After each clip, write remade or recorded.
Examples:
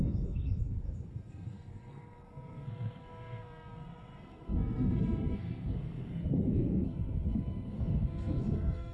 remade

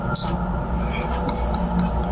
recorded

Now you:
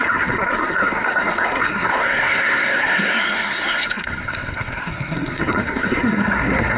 remade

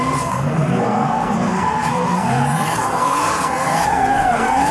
remade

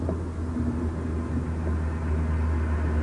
recorded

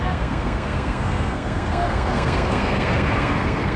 remade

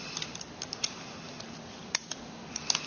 recorded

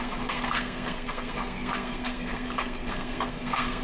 remade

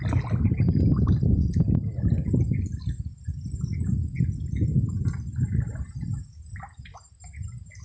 recorded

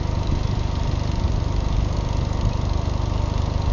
recorded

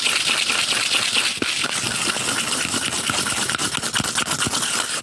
recorded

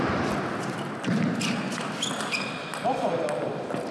recorded